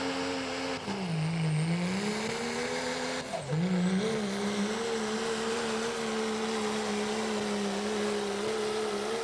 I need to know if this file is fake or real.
real